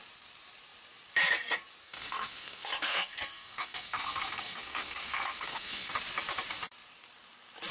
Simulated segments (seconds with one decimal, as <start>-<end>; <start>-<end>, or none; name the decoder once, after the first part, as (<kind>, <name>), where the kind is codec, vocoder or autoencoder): 1.8-5.9 (codec, SNAC)